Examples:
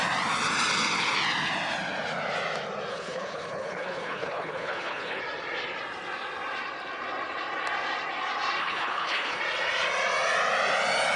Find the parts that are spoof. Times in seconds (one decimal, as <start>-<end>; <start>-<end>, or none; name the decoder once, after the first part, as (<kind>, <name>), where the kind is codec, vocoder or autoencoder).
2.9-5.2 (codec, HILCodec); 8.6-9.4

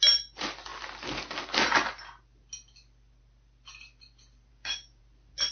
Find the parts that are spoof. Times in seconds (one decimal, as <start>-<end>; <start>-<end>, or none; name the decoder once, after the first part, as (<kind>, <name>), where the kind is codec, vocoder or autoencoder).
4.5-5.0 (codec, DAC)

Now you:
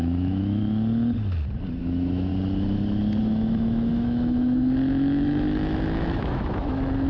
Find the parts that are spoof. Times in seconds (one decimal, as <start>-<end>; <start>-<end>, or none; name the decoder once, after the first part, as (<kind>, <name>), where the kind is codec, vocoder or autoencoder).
0.0-0.6 (autoencoder, DAC-VAE); 1.8-2.3; 3.2-7.1

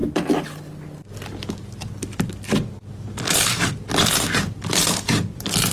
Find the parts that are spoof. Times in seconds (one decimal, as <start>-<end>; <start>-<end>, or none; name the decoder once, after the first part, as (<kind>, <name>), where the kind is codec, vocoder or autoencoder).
none

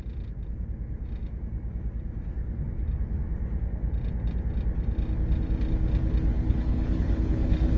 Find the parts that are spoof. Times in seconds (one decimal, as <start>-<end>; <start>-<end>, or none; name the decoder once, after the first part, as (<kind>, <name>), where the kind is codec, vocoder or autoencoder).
6.3-7.8 (codec, HILCodec)

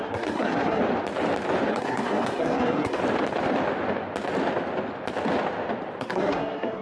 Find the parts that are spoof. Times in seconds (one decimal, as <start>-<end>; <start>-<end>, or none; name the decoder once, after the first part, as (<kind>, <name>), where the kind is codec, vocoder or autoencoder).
0.0-0.8 (codec, SNAC); 1.7-3.0; 6.0-6.8

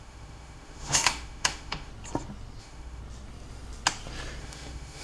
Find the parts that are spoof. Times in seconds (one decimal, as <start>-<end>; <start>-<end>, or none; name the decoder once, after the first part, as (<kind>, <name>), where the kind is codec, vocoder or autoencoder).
0.0-1.9 (autoencoder, DAC-VAE); 2.6-3.0; 4.4-5.0